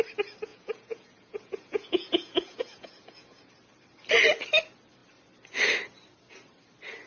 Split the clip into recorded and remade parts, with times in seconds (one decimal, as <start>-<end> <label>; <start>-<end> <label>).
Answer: 0.0-0.5 recorded; 0.5-3.4 remade; 3.4-7.1 recorded